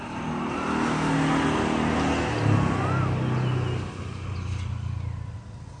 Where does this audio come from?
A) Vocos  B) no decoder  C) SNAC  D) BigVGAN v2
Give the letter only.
B